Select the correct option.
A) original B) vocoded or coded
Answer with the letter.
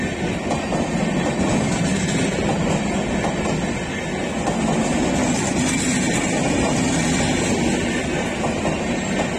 A